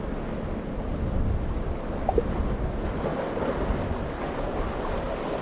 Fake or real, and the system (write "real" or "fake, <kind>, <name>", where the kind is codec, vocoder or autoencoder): real